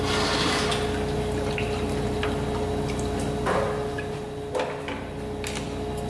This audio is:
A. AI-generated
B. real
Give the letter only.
B